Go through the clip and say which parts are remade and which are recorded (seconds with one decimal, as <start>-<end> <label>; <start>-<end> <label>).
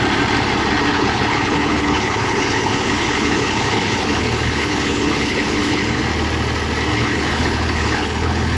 0.0-0.9 recorded; 0.9-6.0 remade; 6.0-6.9 recorded; 6.9-8.6 remade